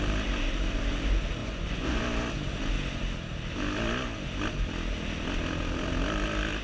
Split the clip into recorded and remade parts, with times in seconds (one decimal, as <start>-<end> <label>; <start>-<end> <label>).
0.0-1.4 recorded; 1.4-2.0 remade; 2.0-6.6 recorded